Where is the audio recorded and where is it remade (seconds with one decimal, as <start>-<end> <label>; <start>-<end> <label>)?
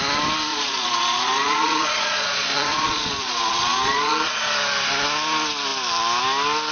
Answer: 0.0-0.5 recorded; 0.5-4.4 remade; 4.4-6.7 recorded